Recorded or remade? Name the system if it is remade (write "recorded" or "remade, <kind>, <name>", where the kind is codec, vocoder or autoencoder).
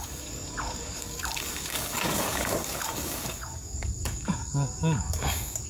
remade, codec, DAC